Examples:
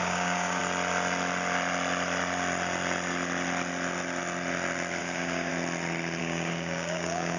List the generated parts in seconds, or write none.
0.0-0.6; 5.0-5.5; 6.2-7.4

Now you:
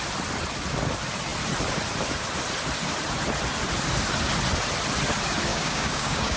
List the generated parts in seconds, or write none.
5.5-6.4

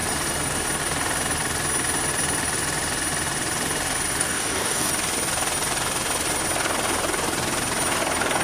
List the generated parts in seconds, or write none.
4.2-4.9

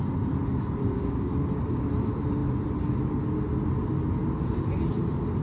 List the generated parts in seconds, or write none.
0.8-1.8

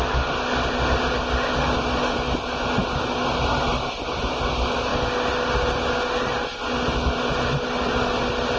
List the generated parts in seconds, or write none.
none

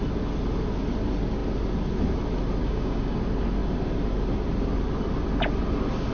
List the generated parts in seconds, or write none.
2.6-3.2

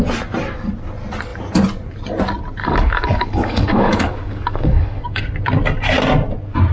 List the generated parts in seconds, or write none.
2.6-5.2

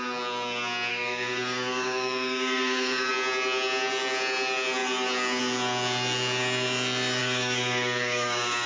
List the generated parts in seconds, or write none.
0.9-3.1; 7.2-8.7